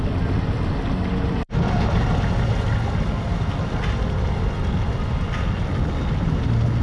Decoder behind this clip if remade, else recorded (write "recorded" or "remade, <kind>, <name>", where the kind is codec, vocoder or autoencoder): recorded